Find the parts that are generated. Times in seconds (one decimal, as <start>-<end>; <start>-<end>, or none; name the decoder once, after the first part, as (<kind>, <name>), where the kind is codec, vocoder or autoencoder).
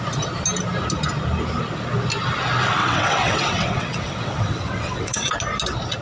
2.8-5.3 (vocoder, WaveNeXt)